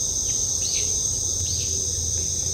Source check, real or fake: real